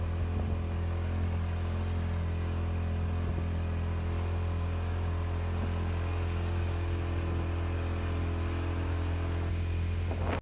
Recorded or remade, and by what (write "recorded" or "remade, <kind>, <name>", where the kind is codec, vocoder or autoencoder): recorded